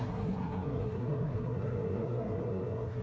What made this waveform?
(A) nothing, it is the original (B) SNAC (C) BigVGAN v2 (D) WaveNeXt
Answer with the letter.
B